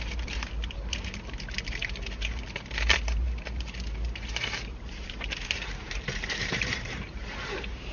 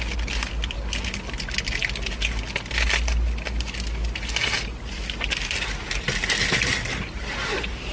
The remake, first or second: first